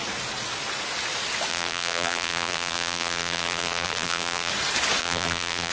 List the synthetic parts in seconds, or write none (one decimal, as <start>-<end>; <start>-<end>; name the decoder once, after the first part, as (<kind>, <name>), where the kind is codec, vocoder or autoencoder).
1.5-4.5 (vocoder, BigVGAN v2); 5.0-5.7